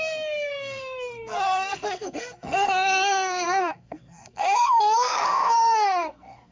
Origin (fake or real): fake